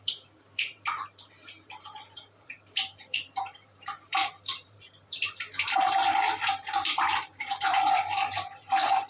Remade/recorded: remade